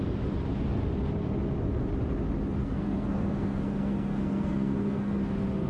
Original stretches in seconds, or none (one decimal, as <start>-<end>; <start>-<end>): 0.0-2.6; 5.1-5.7